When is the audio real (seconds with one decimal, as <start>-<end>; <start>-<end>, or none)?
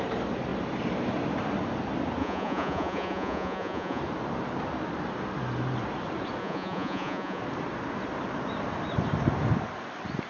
0.0-2.2; 4.0-6.4; 7.4-10.3